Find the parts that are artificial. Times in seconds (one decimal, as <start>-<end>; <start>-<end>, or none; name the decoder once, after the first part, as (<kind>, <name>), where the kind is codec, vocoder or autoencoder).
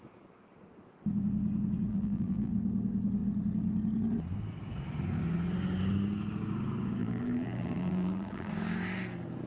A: 1.9-2.5 (vocoder, BigVGAN v2); 7.0-8.5